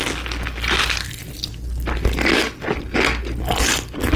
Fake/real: real